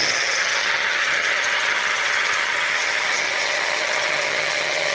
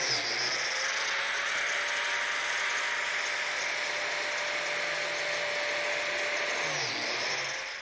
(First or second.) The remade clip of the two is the first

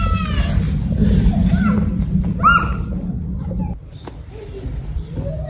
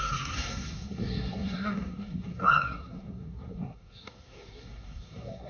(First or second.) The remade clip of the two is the second